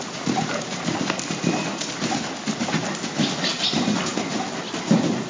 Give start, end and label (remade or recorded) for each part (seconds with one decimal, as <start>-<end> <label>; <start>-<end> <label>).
0.0-5.3 recorded

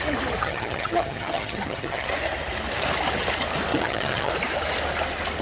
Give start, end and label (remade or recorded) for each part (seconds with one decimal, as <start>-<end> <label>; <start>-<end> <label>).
0.0-0.4 recorded; 0.4-2.1 remade; 2.1-3.7 recorded; 3.7-4.3 remade; 4.3-5.4 recorded

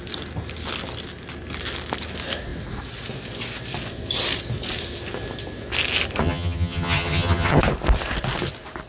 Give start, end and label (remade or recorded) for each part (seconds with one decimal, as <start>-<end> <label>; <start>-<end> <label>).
0.0-6.2 recorded; 6.2-7.6 remade; 7.6-8.9 recorded

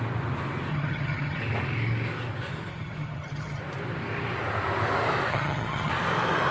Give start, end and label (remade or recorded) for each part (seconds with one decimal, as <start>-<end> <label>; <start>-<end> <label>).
0.0-0.7 recorded; 0.7-1.4 remade; 1.4-2.7 recorded; 2.7-3.6 remade; 3.6-5.3 recorded; 5.3-5.9 remade; 5.9-6.5 recorded

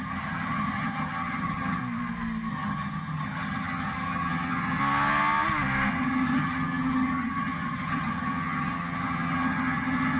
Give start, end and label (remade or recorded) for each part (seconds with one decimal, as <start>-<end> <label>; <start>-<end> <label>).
0.0-1.8 remade; 1.8-2.5 recorded; 2.5-4.8 remade; 4.8-5.9 recorded; 5.9-10.2 remade